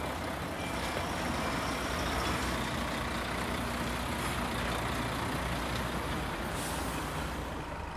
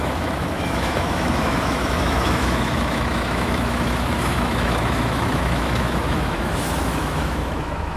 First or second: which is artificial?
second